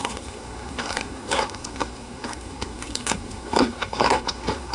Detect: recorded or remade remade